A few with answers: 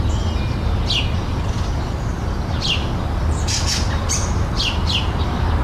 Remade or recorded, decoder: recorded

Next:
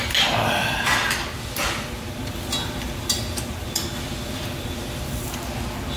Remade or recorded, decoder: recorded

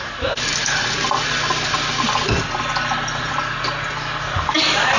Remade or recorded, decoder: recorded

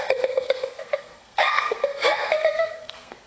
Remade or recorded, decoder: remade, codec, SNAC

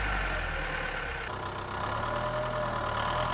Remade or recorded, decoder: recorded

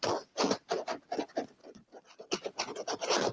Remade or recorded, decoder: recorded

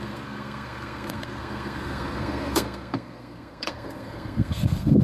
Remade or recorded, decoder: remade, codec, SNAC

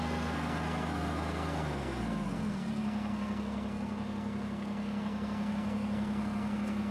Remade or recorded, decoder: remade, codec, SNAC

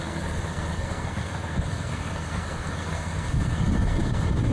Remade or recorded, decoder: remade, codec, SNAC